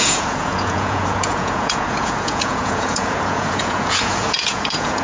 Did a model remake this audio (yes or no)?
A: yes